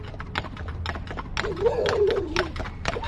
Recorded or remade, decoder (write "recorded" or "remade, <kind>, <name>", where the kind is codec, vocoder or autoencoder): recorded